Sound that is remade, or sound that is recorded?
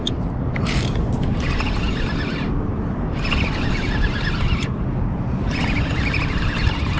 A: remade